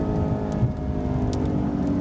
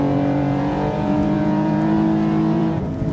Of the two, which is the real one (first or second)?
first